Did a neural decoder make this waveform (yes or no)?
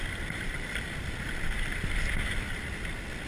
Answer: no